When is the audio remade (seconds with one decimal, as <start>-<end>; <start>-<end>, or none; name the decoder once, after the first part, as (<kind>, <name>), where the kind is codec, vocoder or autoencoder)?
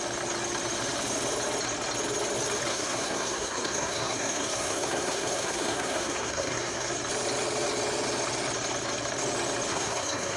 2.7-6.9 (codec, SNAC); 9.7-10.4